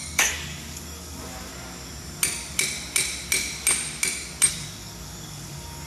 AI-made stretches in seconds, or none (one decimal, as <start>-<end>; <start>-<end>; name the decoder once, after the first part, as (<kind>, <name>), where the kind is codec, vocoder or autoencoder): 0.0-1.5 (codec, DAC); 4.5-5.9